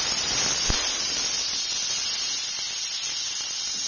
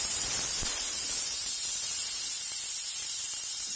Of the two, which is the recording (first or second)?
first